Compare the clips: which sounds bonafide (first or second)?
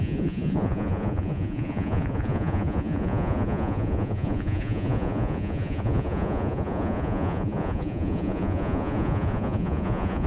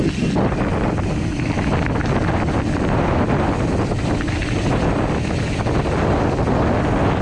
second